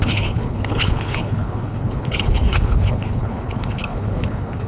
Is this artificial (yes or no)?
yes